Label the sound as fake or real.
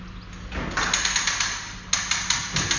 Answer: real